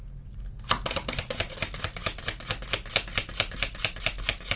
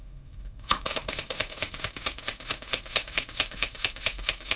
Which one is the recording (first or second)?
first